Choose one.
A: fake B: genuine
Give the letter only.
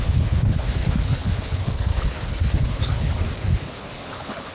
A